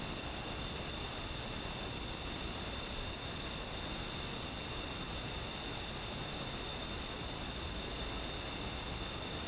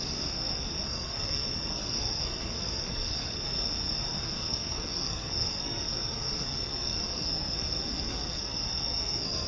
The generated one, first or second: second